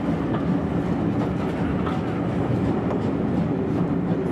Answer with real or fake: real